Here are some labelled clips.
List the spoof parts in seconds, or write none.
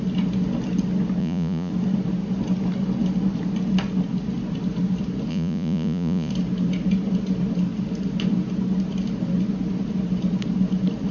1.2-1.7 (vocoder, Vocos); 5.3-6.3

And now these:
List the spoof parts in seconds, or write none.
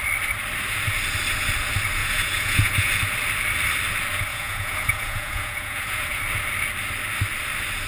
2.0-2.9 (vocoder, Vocos); 4.3-6.2